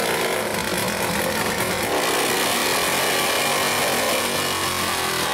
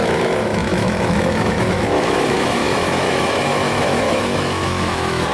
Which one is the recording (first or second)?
first